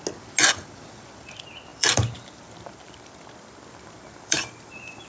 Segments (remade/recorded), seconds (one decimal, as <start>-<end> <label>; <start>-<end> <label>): 0.0-1.7 recorded; 1.7-5.1 remade